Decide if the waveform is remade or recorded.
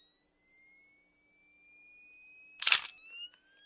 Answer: recorded